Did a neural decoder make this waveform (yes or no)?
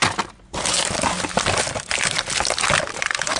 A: no